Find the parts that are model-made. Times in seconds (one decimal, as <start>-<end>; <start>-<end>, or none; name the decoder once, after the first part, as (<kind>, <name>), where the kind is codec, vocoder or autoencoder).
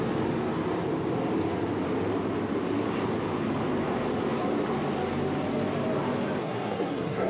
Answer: 6.4-7.3 (codec, SNAC)